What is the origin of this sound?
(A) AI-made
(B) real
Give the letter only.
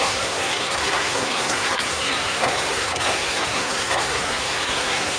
A